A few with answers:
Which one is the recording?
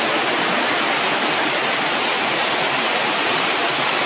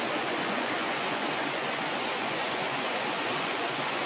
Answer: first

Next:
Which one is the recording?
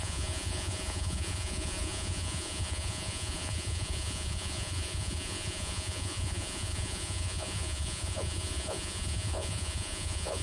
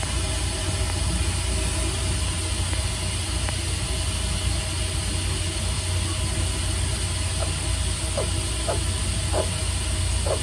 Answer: second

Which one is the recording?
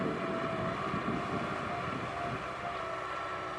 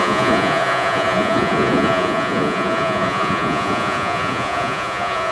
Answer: first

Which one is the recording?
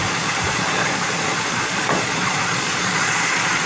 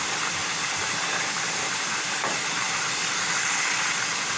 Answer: second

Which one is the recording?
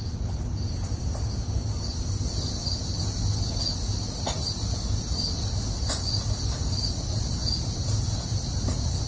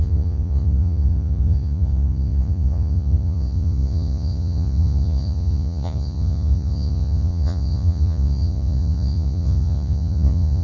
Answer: first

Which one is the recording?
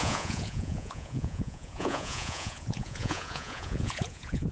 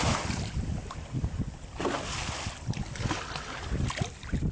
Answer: second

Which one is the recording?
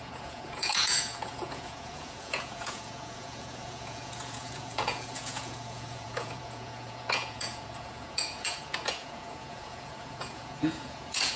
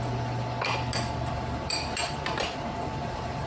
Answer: second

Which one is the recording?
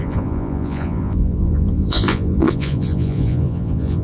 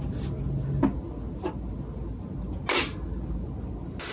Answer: second